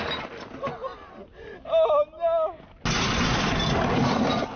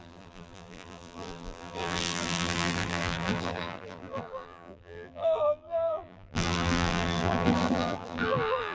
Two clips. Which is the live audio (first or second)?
first